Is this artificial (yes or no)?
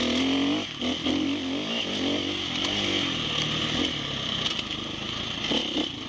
no